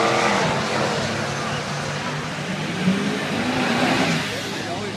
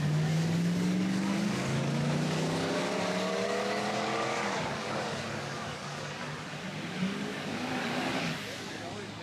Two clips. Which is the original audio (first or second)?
first